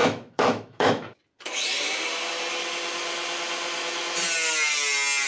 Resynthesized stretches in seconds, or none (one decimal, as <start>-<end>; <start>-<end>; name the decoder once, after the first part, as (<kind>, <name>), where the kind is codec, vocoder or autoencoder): 0.0-1.2 (autoencoder, DAC-VAE)